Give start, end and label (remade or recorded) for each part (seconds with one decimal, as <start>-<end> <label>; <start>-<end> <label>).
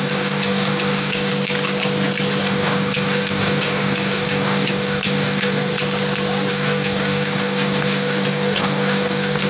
0.0-1.3 remade; 1.3-2.4 recorded; 2.4-5.7 remade; 5.7-6.5 recorded; 6.5-9.5 remade